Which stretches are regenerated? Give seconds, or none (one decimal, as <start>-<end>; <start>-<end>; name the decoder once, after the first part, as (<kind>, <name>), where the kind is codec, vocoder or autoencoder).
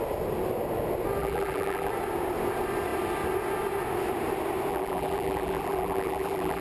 1.2-1.9 (vocoder, BigVGAN v2); 4.7-6.6